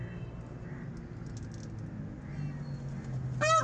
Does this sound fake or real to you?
real